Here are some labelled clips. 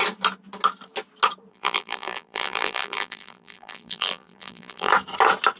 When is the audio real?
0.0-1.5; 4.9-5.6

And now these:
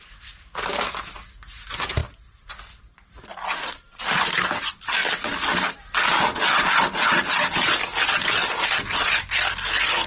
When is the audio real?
0.0-10.1

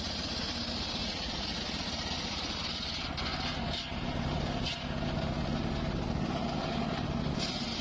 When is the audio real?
0.0-1.0; 1.6-7.8

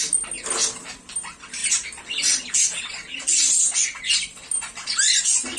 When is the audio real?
0.0-5.6